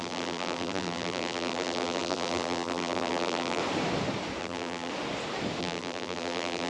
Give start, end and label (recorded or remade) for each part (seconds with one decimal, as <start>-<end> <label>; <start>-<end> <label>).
0.0-3.6 remade; 3.6-4.4 recorded; 4.4-4.9 remade; 4.9-5.6 recorded; 5.6-6.7 remade